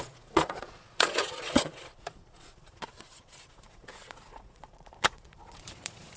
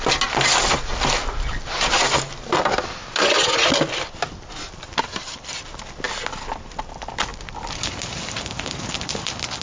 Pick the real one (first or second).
second